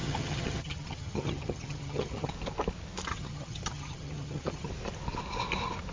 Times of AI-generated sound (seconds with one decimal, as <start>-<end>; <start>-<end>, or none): 0.0-2.3; 3.1-4.7